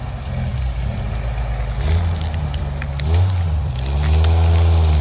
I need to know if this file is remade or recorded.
recorded